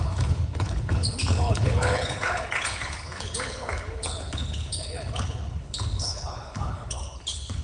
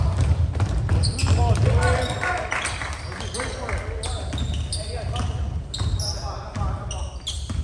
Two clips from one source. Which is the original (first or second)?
second